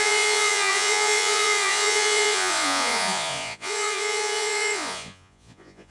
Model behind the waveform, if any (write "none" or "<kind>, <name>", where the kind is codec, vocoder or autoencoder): vocoder, Vocos